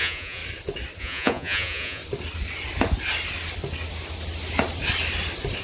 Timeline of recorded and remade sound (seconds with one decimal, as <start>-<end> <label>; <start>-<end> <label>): 0.0-0.4 remade; 0.4-1.0 recorded; 1.0-2.0 remade; 2.0-5.6 recorded